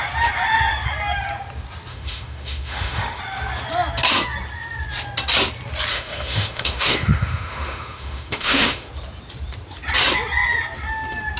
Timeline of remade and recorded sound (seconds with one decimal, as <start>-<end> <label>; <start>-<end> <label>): 0.0-1.9 recorded; 1.9-3.2 remade; 3.2-5.9 recorded; 5.9-8.9 remade; 8.9-11.4 recorded